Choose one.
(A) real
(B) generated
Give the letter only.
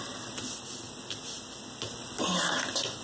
A